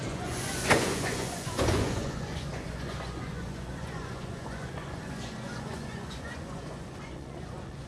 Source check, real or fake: fake